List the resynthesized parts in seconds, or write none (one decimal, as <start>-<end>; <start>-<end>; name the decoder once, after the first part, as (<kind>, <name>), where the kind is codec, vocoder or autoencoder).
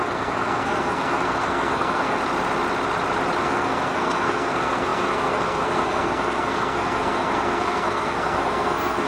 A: 0.0-2.2 (codec, SNAC); 3.4-9.1